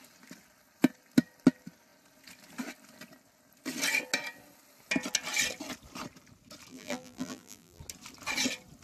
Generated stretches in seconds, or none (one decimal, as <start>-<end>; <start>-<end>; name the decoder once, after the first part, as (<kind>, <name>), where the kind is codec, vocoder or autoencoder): 6.7-7.8 (vocoder, BigVGAN v2)